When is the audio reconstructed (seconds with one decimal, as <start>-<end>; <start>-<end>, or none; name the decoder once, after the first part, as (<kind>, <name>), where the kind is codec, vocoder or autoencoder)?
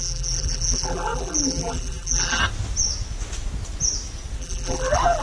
0.0-2.4 (vocoder, BigVGAN v2); 4.4-5.2